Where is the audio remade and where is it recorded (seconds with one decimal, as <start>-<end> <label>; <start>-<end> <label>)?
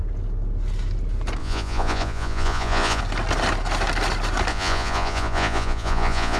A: 0.0-1.4 recorded; 1.4-3.0 remade; 3.0-4.5 recorded; 4.5-6.4 remade